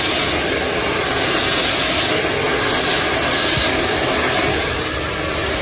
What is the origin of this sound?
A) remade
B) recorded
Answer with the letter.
B